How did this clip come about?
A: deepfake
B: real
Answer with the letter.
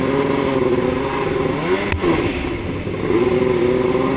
B